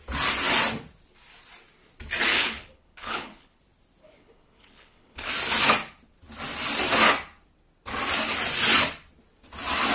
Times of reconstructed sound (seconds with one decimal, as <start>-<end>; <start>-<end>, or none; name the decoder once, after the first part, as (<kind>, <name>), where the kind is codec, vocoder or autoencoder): 2.3-3.6 (codec, HILCodec); 4.0-5.3